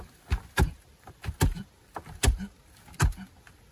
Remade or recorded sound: recorded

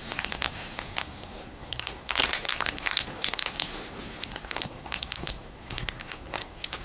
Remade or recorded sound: remade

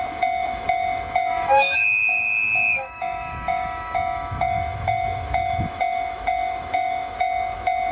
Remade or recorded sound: remade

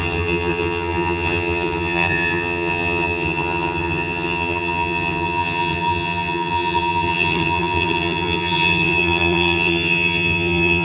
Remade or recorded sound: remade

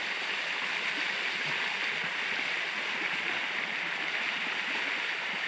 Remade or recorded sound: recorded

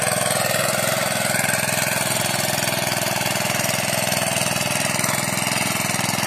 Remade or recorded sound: recorded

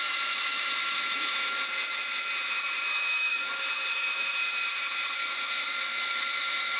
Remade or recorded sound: remade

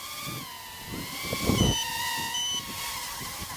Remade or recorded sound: recorded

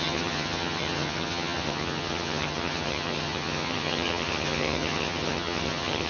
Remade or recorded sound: remade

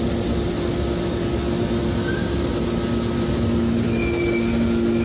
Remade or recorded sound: recorded